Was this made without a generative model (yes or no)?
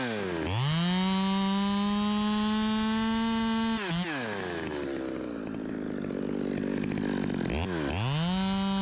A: yes